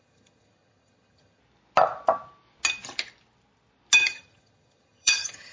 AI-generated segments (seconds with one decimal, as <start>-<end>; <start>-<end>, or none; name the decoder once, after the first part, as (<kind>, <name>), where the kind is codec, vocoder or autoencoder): 0.0-1.4 (vocoder, HiFi-GAN); 4.1-5.5